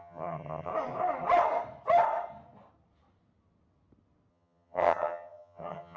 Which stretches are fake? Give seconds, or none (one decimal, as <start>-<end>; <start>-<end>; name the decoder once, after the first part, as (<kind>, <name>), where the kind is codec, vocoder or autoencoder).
0.0-0.7 (vocoder, HiFi-GAN); 4.3-6.0